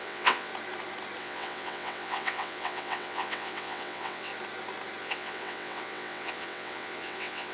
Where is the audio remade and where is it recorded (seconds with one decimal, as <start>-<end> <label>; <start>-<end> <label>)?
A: 0.0-0.5 remade; 0.5-1.2 recorded; 1.2-4.3 remade; 4.3-5.0 recorded; 5.0-7.5 remade